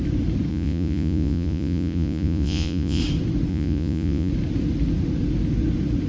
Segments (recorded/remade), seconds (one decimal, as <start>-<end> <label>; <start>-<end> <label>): 0.0-0.5 recorded; 0.5-3.0 remade; 3.0-3.5 recorded; 3.5-4.3 remade; 4.3-6.1 recorded